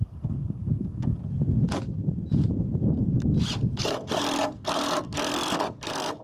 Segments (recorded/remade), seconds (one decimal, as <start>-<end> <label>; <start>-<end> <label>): 0.0-1.2 remade; 1.2-3.8 recorded; 3.8-6.2 remade